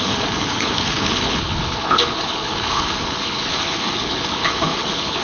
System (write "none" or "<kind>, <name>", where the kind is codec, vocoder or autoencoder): codec, HILCodec